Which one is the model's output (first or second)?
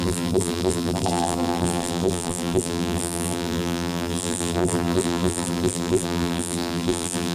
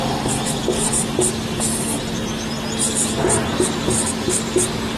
first